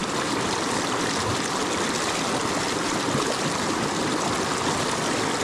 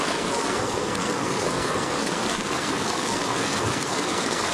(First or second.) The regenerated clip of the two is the second